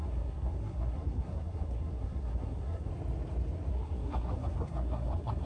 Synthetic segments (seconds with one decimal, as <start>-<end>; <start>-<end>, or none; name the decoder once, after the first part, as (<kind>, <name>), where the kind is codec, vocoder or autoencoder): 0.0-2.9 (codec, SNAC); 3.7-5.5